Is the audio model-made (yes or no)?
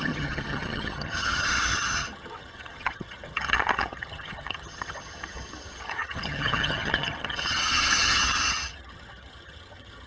yes